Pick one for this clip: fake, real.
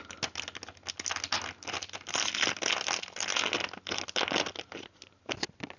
real